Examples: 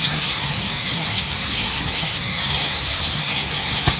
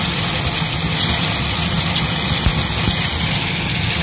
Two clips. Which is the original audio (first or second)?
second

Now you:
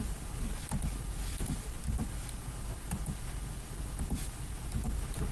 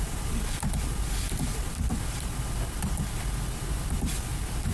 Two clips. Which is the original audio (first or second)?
first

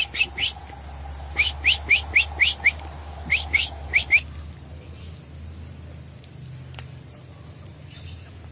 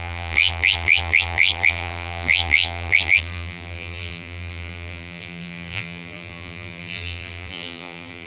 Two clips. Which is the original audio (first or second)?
first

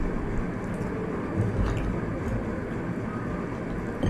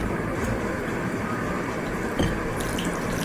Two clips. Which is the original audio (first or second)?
first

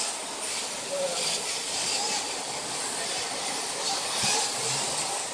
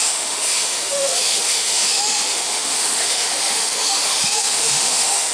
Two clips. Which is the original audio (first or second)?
first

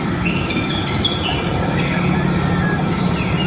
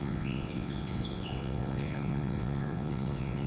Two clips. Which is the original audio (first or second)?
first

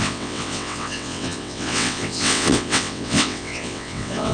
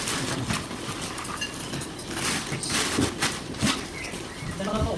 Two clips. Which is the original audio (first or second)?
second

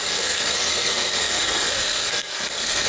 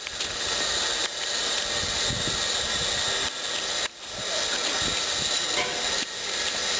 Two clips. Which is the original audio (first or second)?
second